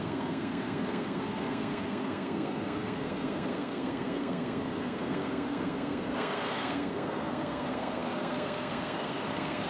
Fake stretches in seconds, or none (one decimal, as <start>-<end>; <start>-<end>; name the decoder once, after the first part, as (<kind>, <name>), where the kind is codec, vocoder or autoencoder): 0.0-9.7 (codec, SNAC)